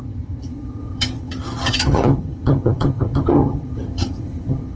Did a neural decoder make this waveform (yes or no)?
yes